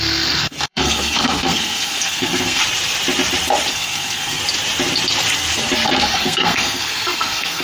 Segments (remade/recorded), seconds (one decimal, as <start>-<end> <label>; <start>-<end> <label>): 0.0-2.6 remade; 2.6-3.7 recorded; 3.7-4.4 remade; 4.4-6.0 recorded; 6.0-7.6 remade